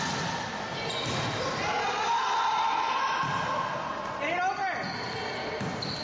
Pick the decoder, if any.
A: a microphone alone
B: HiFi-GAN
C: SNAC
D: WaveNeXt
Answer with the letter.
A